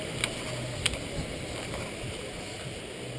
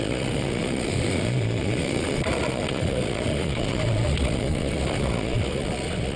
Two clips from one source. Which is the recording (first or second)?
first